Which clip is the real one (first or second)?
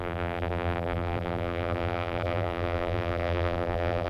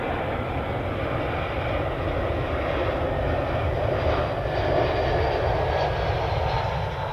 second